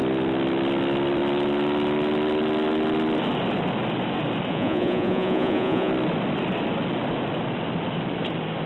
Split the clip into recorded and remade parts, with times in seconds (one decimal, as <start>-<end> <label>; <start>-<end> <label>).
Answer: 0.0-4.5 recorded; 4.5-5.9 remade; 5.9-8.7 recorded